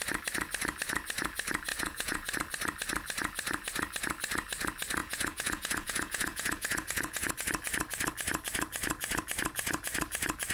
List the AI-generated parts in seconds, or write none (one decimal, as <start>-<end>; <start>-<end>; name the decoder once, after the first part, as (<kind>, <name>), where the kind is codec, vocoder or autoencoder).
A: 1.7-2.3 (vocoder, Vocos); 5.0-7.3